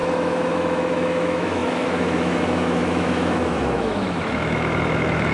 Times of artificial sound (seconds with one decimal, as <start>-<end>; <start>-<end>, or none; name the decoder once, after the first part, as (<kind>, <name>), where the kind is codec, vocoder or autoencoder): 0.0-5.3 (autoencoder, DAC-VAE)